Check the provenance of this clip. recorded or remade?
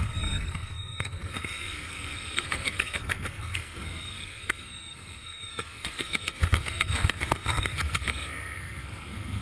remade